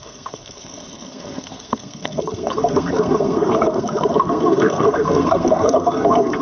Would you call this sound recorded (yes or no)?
no